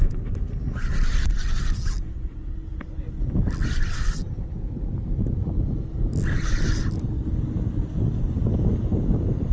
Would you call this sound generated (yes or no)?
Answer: no